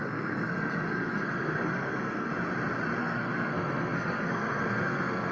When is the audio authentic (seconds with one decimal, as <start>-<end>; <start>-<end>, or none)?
2.3-3.0